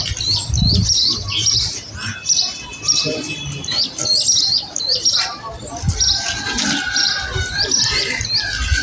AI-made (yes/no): no